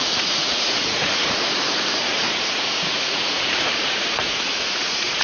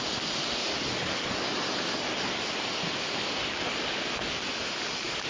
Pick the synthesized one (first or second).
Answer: first